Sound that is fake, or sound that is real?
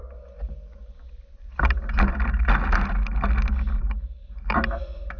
real